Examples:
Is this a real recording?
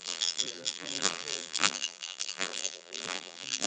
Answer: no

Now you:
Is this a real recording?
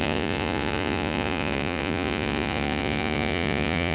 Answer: no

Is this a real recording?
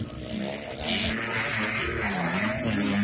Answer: yes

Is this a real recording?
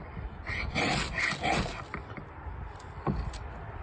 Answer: yes